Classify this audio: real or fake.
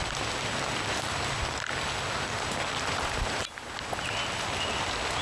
real